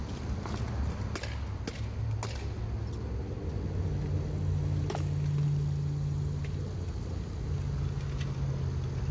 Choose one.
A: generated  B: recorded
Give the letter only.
B